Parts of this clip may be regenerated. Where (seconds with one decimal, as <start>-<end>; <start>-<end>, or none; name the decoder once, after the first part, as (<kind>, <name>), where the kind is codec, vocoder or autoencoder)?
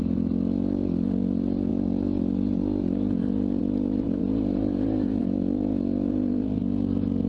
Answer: none